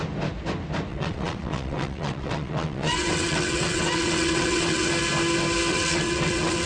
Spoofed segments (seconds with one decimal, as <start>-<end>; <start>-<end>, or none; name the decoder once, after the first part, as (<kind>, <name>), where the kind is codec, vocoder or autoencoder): 0.9-4.9 (vocoder, WaveNeXt); 5.7-6.7